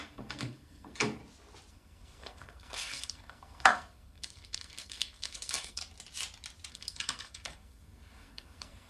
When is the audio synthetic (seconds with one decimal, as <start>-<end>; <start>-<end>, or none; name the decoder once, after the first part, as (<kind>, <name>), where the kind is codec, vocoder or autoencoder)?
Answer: 0.0-1.2 (codec, SNAC); 1.7-5.8; 6.7-8.9

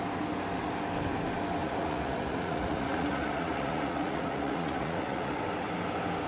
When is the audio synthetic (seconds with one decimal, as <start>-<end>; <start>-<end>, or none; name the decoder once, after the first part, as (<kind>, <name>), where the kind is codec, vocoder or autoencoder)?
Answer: 1.6-5.4 (vocoder, Vocos)

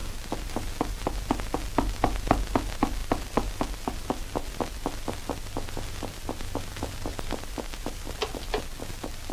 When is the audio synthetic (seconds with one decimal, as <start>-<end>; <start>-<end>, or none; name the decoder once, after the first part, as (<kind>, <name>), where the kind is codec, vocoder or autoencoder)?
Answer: 7.1-8.6 (vocoder, BigVGAN v2)